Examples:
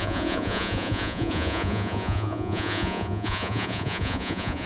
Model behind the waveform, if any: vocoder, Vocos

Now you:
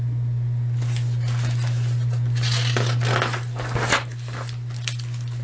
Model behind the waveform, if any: none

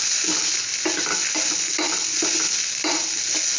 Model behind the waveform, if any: none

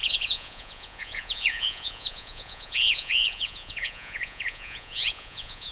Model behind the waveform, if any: vocoder, Vocos